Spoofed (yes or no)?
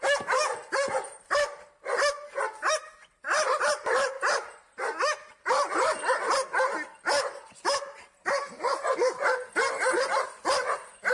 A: no